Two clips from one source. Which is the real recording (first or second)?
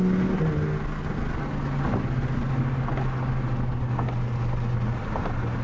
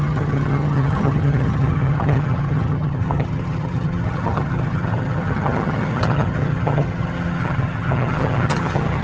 first